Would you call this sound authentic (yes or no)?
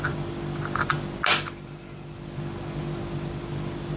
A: yes